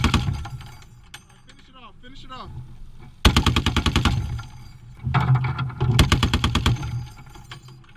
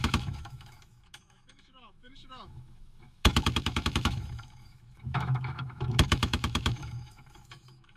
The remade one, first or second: second